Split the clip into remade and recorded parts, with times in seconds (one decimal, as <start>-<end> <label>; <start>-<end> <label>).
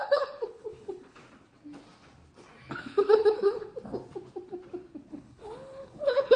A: 0.0-1.2 remade; 1.2-2.8 recorded; 2.8-3.7 remade; 3.7-5.1 recorded; 5.1-6.4 remade